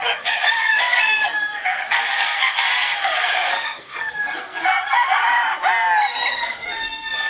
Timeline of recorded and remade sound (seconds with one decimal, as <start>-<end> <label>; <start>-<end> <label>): 0.0-5.2 remade; 5.2-6.3 recorded; 6.3-7.3 remade